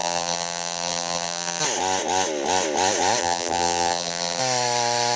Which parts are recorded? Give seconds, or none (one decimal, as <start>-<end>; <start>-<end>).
1.6-3.2; 4.4-5.2